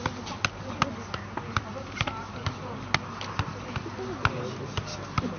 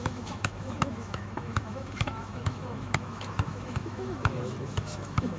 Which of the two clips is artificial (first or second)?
second